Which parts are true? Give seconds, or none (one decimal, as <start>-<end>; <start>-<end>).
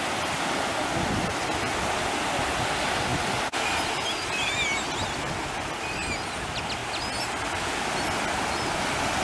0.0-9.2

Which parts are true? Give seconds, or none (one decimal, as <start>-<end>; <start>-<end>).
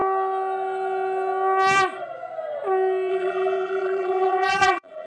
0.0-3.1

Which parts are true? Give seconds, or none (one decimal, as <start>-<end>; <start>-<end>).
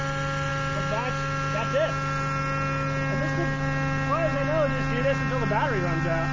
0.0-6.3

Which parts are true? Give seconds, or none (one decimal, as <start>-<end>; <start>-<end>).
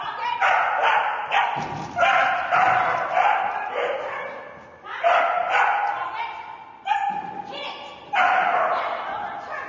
0.0-9.7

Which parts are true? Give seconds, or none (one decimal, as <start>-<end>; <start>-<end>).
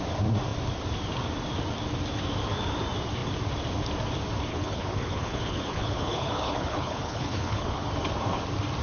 0.0-4.5; 7.9-8.8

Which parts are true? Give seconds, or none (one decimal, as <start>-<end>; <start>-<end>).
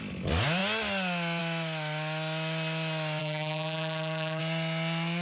0.0-3.2; 4.4-5.2